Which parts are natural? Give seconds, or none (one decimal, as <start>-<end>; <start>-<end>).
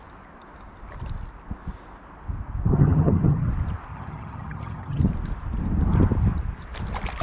0.0-2.7; 3.5-3.9; 5.0-7.2